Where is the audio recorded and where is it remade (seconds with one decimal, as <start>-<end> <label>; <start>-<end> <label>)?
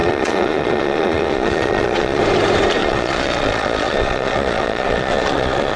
0.0-2.2 remade; 2.2-2.8 recorded; 2.8-5.8 remade